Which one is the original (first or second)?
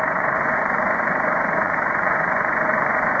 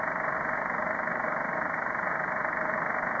second